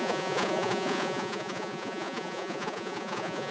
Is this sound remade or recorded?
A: remade